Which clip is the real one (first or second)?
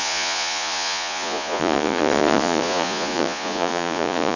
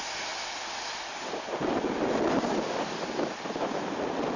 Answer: second